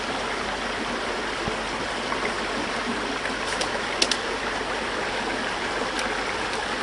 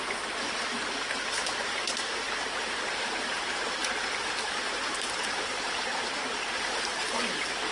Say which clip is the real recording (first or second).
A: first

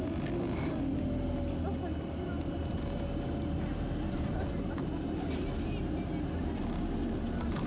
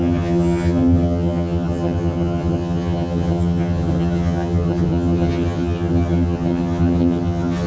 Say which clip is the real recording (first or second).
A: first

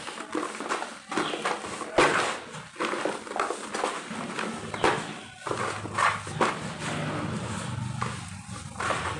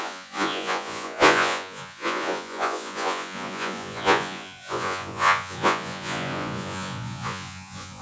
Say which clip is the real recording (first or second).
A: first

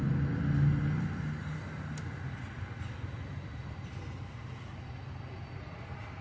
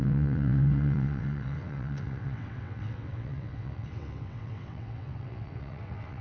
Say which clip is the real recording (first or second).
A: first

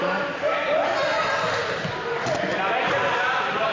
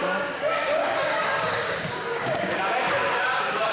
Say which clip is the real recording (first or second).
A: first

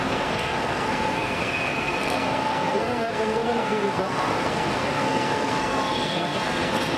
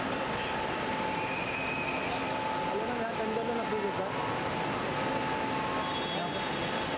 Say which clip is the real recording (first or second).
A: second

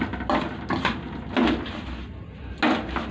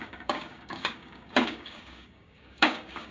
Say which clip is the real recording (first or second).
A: first